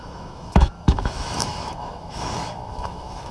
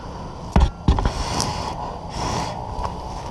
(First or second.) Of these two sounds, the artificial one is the first